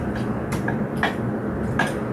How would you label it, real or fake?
real